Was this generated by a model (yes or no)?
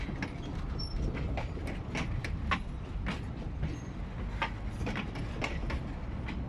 no